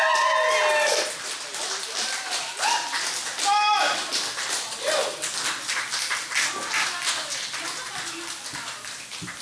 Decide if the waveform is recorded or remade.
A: recorded